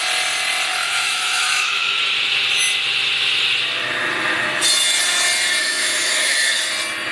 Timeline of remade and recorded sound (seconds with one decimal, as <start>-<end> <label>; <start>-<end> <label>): 0.0-0.7 recorded; 0.7-2.0 remade; 2.0-5.6 recorded; 5.6-6.6 remade; 6.6-7.1 recorded